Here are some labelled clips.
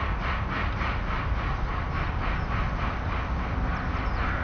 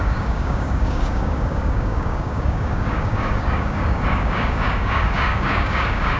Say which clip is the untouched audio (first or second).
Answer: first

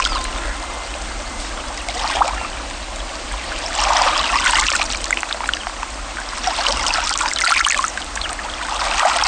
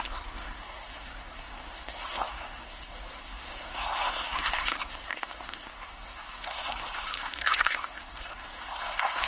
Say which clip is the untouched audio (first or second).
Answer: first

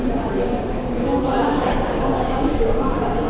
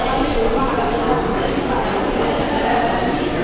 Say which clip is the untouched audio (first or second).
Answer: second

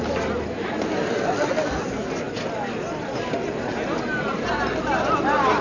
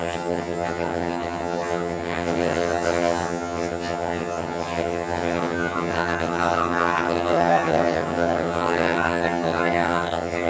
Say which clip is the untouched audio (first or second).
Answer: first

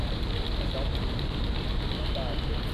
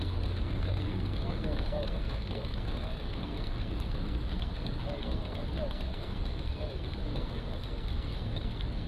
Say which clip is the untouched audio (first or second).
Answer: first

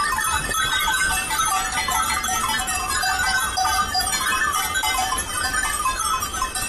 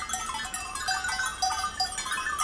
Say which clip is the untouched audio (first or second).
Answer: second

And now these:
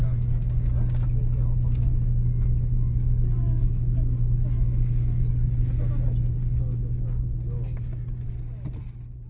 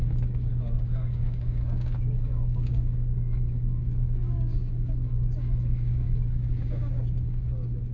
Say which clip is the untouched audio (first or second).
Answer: first